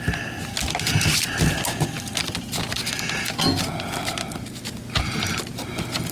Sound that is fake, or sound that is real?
real